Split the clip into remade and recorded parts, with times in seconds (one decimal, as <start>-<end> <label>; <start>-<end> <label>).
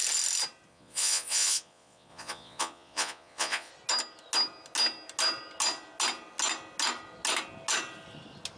0.0-0.7 recorded; 0.7-3.7 remade; 3.7-8.6 recorded